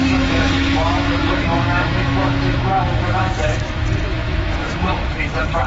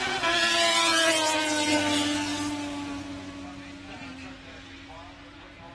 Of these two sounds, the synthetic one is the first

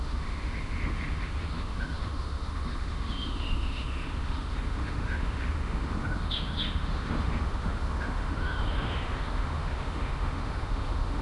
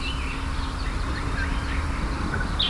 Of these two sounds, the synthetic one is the first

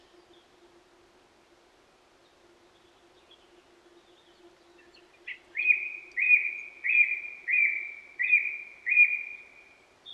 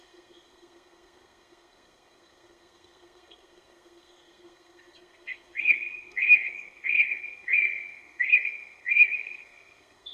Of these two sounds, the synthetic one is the second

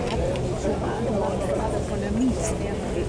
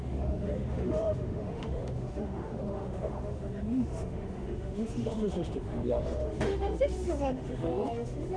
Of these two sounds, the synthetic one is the second